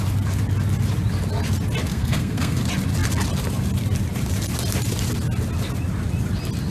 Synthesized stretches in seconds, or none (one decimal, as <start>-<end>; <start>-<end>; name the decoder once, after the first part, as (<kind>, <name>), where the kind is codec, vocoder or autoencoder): 1.9-2.6 (codec, SNAC)